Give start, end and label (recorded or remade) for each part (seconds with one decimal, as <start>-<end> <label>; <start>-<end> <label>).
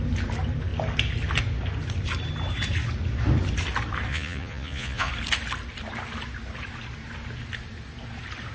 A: 0.0-4.1 recorded; 4.1-5.1 remade; 5.1-8.5 recorded